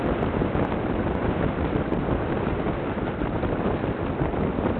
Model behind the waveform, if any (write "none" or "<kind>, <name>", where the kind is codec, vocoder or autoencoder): none